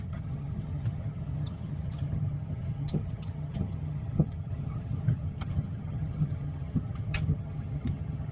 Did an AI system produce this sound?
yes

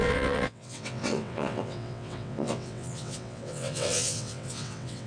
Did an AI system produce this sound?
yes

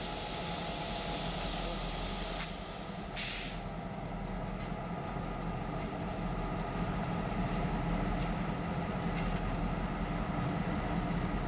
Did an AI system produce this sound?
no